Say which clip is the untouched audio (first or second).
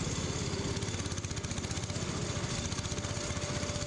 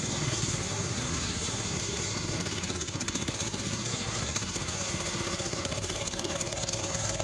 first